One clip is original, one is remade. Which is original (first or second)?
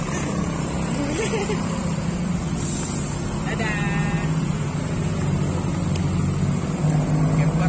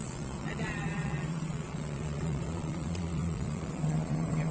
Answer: first